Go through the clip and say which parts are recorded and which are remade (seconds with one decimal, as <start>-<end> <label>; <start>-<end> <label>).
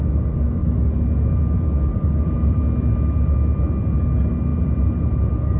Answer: 0.0-1.9 recorded; 1.9-2.6 remade; 2.6-4.5 recorded; 4.5-5.6 remade